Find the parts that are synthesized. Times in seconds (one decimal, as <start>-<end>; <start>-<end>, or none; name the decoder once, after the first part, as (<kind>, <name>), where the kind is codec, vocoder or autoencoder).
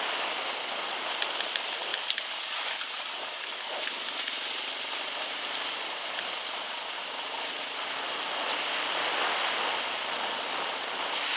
1.9-3.7 (codec, DAC)